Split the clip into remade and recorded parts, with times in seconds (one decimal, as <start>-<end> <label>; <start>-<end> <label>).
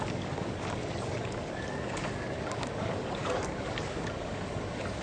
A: 0.0-5.0 remade